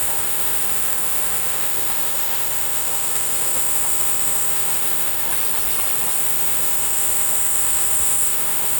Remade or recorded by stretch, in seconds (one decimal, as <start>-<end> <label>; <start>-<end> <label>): 0.0-5.3 remade; 5.3-6.2 recorded; 6.2-8.8 remade